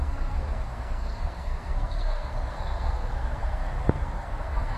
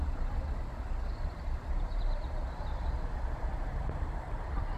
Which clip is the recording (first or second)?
second